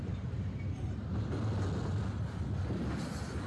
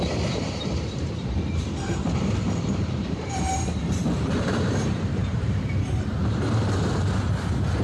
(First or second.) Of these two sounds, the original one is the first